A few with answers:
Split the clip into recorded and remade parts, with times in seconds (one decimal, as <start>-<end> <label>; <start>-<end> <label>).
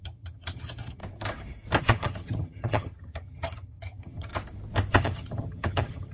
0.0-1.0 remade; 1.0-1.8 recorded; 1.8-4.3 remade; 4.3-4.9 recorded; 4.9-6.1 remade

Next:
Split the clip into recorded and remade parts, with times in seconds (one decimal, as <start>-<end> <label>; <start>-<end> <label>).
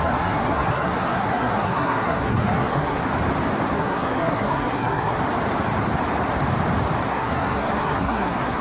0.0-3.0 remade; 3.0-3.7 recorded; 3.7-5.2 remade; 5.2-7.1 recorded; 7.1-8.6 remade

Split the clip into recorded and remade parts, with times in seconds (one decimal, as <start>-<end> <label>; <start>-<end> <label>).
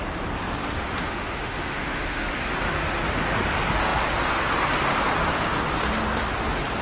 0.0-0.6 recorded; 0.6-2.3 remade; 2.3-6.8 recorded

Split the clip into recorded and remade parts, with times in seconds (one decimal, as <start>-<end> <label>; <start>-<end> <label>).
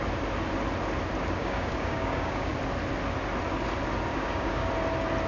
0.0-1.4 recorded; 1.4-2.5 remade; 2.5-4.1 recorded; 4.1-4.7 remade; 4.7-5.3 recorded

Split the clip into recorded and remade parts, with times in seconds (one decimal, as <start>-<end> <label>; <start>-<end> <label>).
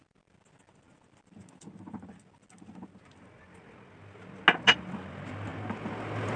0.0-6.4 recorded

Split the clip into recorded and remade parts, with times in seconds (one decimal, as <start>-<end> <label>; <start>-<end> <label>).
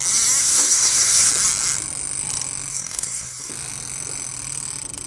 0.0-0.4 recorded; 0.4-1.3 remade; 1.3-2.7 recorded; 2.7-3.5 remade; 3.5-5.1 recorded